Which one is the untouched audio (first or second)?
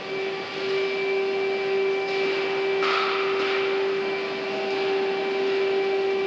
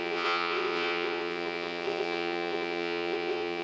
first